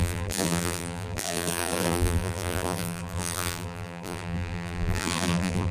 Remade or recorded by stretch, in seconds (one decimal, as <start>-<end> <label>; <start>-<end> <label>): 0.0-5.7 remade